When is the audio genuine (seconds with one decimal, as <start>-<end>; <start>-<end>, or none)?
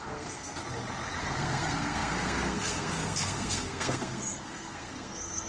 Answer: 0.6-1.2